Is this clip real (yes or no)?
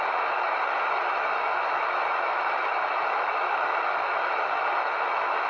no